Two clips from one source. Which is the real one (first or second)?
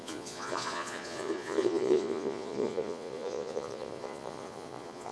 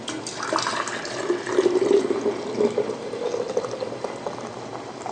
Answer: second